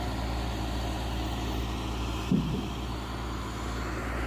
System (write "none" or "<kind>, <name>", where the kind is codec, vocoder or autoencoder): none